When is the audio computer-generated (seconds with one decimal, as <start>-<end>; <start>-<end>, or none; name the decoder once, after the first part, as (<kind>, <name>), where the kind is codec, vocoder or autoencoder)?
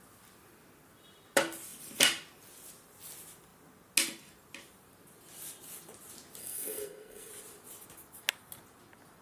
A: 6.4-7.3 (codec, SNAC)